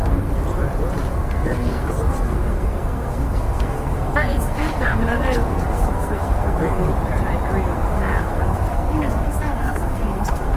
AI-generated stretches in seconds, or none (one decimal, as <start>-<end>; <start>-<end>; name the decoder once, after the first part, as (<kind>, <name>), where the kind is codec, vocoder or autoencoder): 0.0-0.4 (codec, SNAC); 1.1-6.9; 7.7-10.6